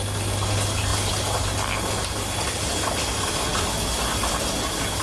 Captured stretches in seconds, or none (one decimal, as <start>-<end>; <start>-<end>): 0.0-5.0